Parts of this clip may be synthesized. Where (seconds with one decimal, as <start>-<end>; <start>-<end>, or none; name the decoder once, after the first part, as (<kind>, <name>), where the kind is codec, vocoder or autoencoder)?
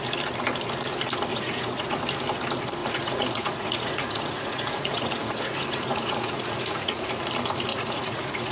1.3-2.0 (vocoder, Vocos); 2.8-7.1; 7.7-8.5